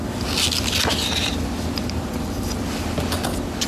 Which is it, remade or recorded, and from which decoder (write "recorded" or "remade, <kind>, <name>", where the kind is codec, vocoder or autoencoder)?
recorded